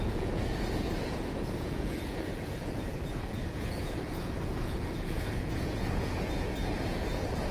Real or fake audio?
fake